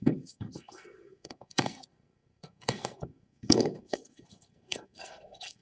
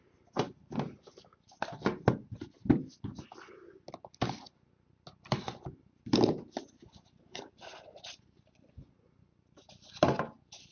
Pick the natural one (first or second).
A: second